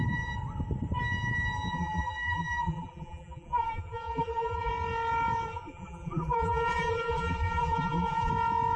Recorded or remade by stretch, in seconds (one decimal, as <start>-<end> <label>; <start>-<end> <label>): 0.0-1.7 recorded; 1.7-4.7 remade; 4.7-5.5 recorded; 5.5-8.3 remade; 8.3-8.8 recorded